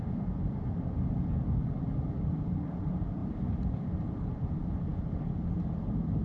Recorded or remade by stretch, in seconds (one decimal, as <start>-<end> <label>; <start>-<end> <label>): 0.0-6.2 recorded